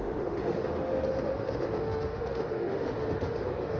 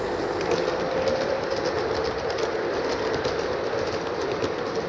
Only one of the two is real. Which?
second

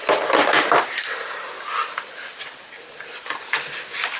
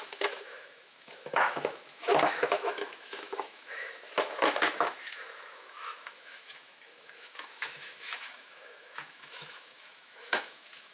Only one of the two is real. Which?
first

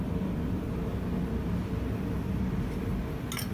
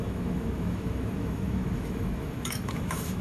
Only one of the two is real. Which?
first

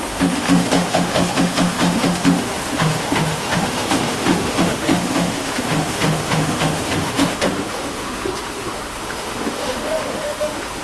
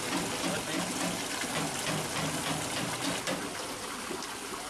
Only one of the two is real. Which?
second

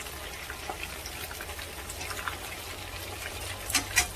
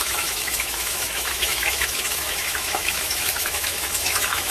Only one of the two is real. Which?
first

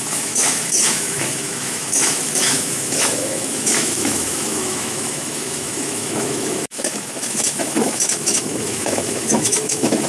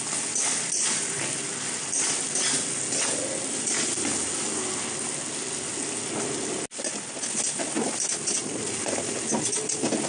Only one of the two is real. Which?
second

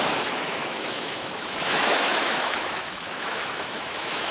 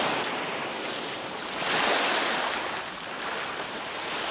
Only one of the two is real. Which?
second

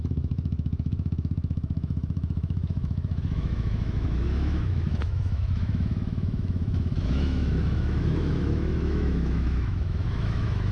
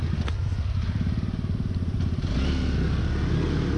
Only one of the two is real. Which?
second